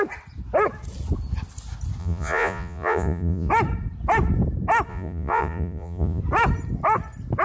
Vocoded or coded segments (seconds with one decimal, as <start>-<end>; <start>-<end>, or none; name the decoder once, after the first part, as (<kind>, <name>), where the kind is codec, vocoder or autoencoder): 2.0-3.5 (vocoder, Vocos); 4.9-6.2